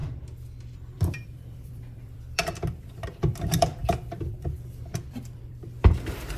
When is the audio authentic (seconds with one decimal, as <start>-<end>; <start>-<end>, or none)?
0.0-0.6

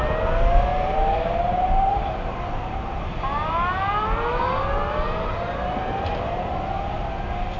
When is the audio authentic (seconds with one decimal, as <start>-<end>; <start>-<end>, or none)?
0.0-0.7; 3.0-5.3; 6.5-7.6

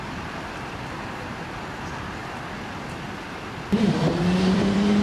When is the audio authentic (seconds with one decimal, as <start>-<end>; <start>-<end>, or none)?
none

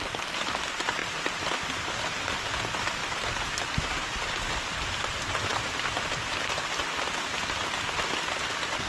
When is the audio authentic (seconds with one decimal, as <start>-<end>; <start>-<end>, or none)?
1.0-2.0

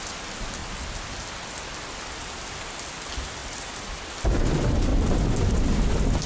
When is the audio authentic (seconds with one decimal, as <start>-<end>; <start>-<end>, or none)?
0.0-0.6; 1.2-3.4; 4.1-4.9

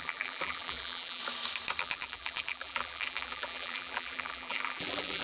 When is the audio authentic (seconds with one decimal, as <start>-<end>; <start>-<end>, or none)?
1.2-1.8